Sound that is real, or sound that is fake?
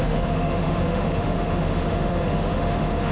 fake